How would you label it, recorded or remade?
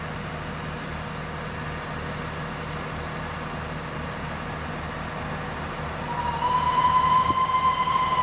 recorded